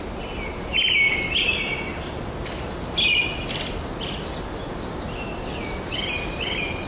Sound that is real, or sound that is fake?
real